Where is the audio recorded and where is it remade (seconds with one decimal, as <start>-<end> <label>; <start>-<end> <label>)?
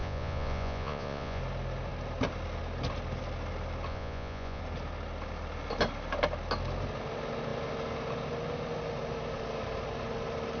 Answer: 0.0-1.4 remade; 1.4-3.9 recorded; 3.9-4.6 remade; 4.6-10.6 recorded